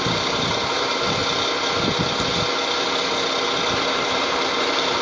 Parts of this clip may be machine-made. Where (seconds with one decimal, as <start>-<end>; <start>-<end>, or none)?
0.0-1.2; 3.9-5.0